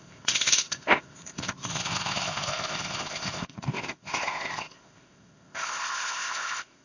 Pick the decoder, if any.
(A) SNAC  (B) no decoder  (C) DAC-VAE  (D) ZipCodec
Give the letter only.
D